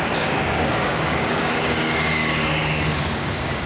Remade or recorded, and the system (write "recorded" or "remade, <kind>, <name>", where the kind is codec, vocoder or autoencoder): remade, codec, DAC